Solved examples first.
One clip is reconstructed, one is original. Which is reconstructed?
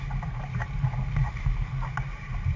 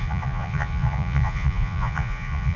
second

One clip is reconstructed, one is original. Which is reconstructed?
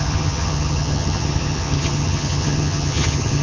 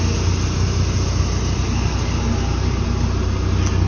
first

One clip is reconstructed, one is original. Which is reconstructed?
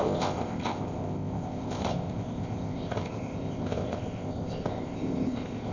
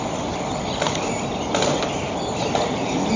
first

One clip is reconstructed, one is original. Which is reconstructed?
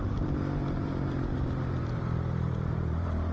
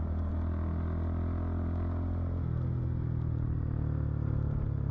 first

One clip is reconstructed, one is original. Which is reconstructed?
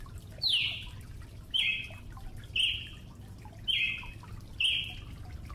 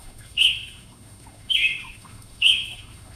second